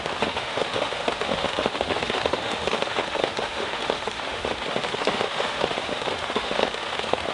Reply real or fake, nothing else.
fake